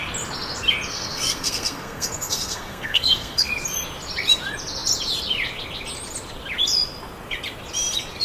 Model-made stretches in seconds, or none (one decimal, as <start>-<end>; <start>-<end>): 0.9-3.5